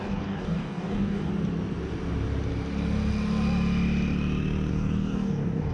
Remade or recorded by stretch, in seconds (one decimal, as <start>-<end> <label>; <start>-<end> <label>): 0.0-1.3 remade; 1.3-4.7 recorded; 4.7-5.7 remade